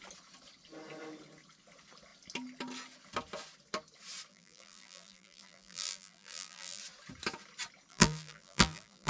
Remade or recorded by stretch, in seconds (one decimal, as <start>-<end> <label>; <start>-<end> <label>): 0.0-4.3 recorded; 4.3-6.8 remade; 6.8-7.9 recorded; 7.9-9.1 remade

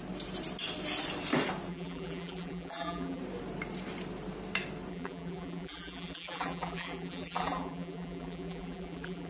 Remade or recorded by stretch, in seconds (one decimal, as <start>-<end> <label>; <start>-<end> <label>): 0.0-1.7 recorded; 1.7-3.2 remade; 3.2-4.9 recorded; 4.9-9.3 remade

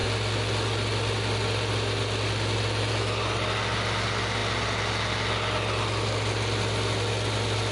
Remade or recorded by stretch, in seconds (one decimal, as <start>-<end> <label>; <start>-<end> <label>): 0.0-7.7 recorded

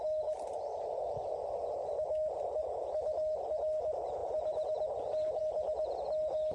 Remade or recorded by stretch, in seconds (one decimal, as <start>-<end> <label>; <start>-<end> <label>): 0.0-4.2 recorded; 4.2-5.4 remade; 5.4-6.5 recorded

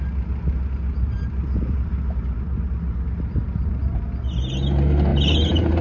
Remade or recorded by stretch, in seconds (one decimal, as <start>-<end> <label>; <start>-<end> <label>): 0.0-5.1 recorded; 5.1-5.8 remade

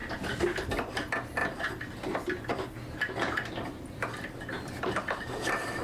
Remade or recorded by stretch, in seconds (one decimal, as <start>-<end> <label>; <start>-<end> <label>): 0.0-0.7 recorded; 0.7-1.4 remade; 1.4-4.7 recorded; 4.7-5.8 remade

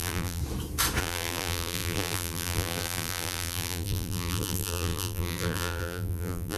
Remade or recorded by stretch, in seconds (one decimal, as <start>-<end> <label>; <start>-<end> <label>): 0.0-0.4 remade; 0.4-1.0 recorded; 1.0-6.6 remade